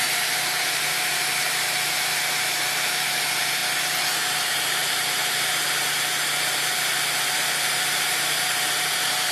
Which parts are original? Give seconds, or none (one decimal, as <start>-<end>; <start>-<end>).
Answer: 3.6-4.1